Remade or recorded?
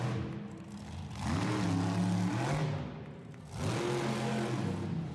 recorded